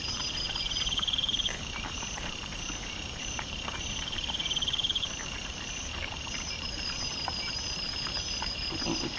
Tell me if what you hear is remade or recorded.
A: remade